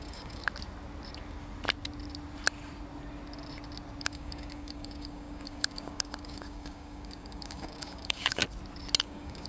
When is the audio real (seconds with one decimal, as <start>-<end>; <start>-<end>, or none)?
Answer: 0.4-4.0; 8.4-9.0